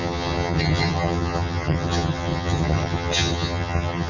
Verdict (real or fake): fake